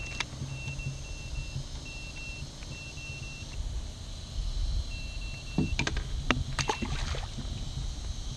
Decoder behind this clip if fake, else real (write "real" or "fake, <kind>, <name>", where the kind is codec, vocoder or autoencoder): real